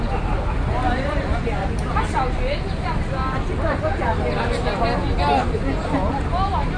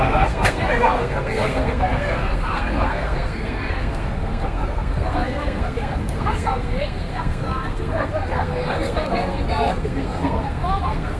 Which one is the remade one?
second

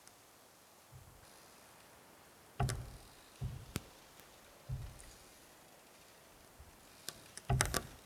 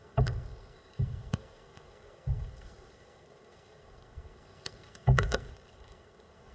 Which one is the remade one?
second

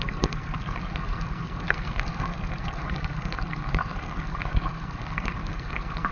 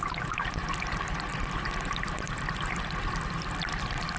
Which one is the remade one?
first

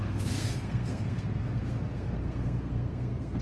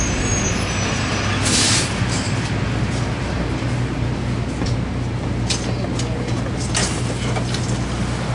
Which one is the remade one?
first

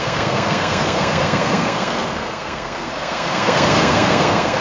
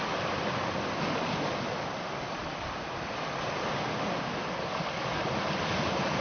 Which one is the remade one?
first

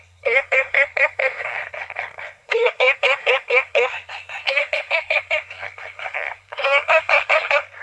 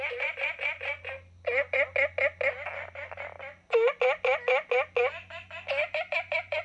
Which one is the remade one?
first